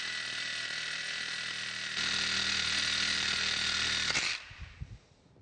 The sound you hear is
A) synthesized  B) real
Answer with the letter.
B